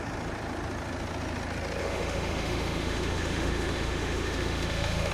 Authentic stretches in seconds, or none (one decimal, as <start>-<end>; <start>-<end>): 0.0-1.8

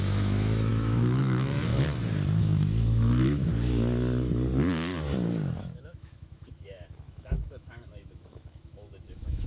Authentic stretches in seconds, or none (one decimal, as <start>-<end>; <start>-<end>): 1.7-2.4; 3.5-5.6

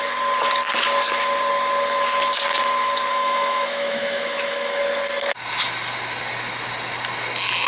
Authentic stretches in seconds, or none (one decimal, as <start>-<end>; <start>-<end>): 0.0-3.1; 4.8-7.7

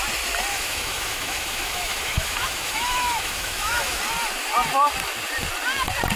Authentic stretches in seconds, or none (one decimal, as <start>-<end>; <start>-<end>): 0.0-0.5; 4.0-6.2

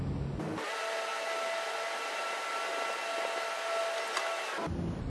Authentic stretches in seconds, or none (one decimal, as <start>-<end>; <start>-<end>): 0.0-5.1